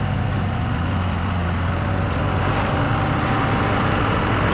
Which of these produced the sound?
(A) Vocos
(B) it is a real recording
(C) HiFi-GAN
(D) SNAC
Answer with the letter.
B